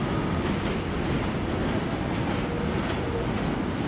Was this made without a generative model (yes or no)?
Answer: yes